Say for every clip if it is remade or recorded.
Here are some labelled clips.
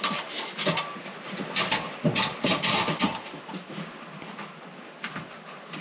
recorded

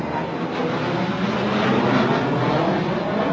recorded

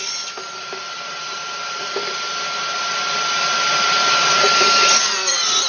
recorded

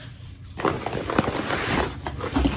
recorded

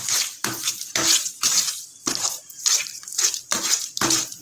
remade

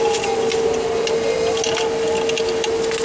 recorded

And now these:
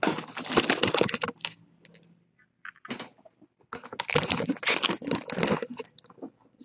recorded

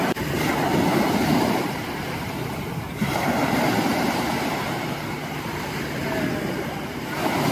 remade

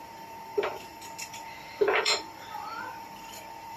remade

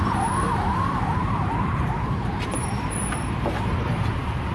remade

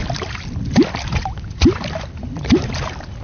remade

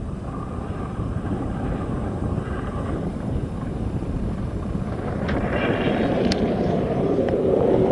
remade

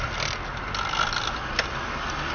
recorded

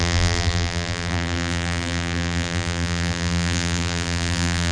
remade